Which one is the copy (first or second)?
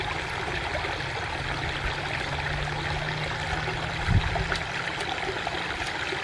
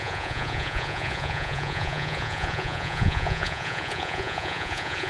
second